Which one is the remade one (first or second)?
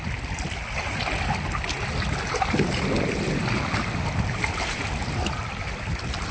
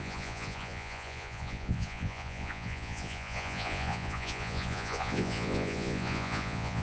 second